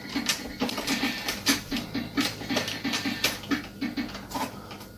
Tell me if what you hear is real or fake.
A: real